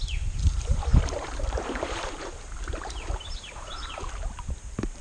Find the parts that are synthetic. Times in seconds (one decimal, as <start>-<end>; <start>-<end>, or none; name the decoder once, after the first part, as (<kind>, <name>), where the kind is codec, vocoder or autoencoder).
0.9-3.9 (vocoder, BigVGAN v2)